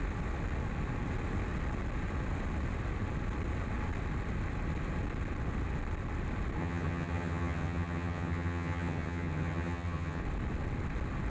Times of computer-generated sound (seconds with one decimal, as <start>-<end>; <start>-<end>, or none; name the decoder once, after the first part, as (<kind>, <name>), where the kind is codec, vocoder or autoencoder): 6.6-10.2 (vocoder, HiFi-GAN)